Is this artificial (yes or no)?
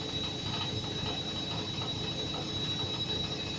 no